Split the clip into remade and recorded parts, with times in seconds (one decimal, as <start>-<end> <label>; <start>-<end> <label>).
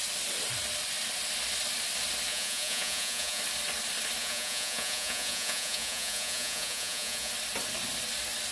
0.0-2.3 recorded; 2.3-3.4 remade; 3.4-4.2 recorded; 4.2-7.3 remade; 7.3-8.5 recorded